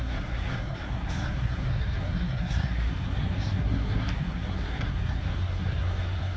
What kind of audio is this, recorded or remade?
remade